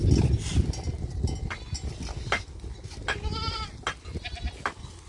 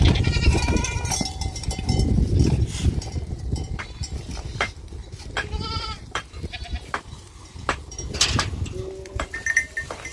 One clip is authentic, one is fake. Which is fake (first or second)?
second